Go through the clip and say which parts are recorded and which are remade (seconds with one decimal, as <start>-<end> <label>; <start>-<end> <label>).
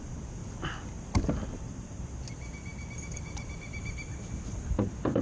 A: 0.0-0.4 remade; 0.4-1.5 recorded; 1.5-5.2 remade